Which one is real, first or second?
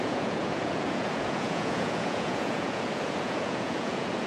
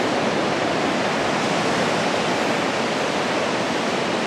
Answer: second